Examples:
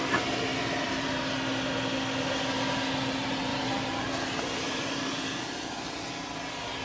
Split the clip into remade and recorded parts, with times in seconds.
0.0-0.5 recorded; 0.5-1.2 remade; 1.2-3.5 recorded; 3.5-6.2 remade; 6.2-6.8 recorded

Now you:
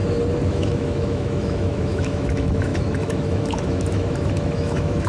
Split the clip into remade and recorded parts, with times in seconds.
0.0-0.5 recorded; 0.5-5.1 remade

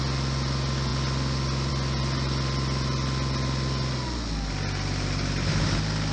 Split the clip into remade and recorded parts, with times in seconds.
0.0-6.1 recorded